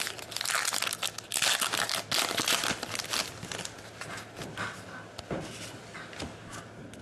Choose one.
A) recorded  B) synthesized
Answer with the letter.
A